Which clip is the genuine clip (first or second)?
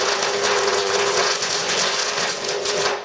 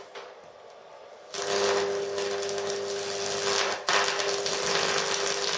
second